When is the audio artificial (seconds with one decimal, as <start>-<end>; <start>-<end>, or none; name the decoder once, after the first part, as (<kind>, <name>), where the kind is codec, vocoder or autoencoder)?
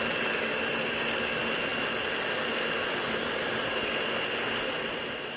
none